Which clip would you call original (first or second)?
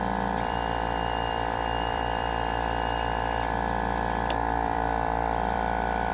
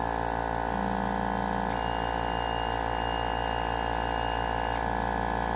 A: second